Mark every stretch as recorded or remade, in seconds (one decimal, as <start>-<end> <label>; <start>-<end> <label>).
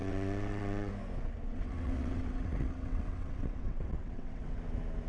0.0-0.9 remade; 0.9-1.5 recorded; 1.5-4.6 remade; 4.6-5.1 recorded